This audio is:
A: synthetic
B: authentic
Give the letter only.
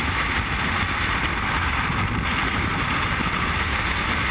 B